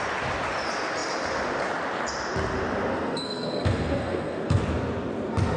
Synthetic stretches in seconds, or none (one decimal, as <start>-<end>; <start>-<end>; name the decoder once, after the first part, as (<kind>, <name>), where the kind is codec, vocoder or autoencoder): 2.9-4.6 (codec, SNAC)